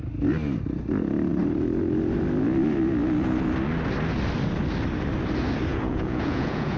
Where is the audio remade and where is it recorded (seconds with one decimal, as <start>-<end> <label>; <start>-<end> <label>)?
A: 0.0-5.7 recorded; 5.7-6.8 remade